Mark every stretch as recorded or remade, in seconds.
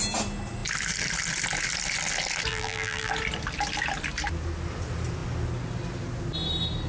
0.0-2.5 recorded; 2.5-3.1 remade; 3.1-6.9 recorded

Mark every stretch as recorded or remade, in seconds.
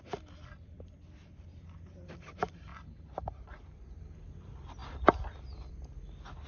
0.0-1.2 recorded; 1.2-1.7 remade; 1.7-2.7 recorded; 2.7-3.8 remade; 3.8-6.5 recorded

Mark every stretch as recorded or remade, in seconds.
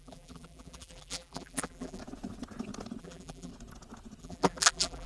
0.0-2.0 remade; 2.0-3.0 recorded; 3.0-3.5 remade; 3.5-4.2 recorded; 4.2-5.1 remade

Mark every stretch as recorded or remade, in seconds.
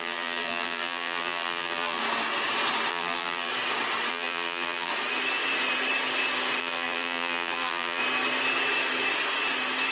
0.0-2.0 remade; 2.0-2.9 recorded; 2.9-3.5 remade; 3.5-4.1 recorded; 4.1-4.9 remade; 4.9-6.6 recorded; 6.6-8.0 remade; 8.0-9.9 recorded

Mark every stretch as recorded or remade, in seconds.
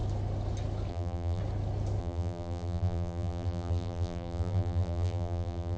0.0-0.9 recorded; 0.9-1.4 remade; 1.4-2.0 recorded; 2.0-5.8 remade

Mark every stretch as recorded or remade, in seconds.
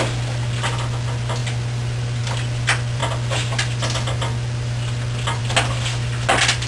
0.0-1.4 recorded; 1.4-2.2 remade; 2.2-6.7 recorded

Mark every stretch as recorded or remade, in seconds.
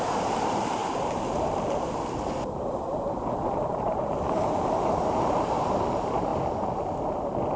0.0-0.8 remade; 0.8-2.1 recorded; 2.1-6.3 remade; 6.3-7.6 recorded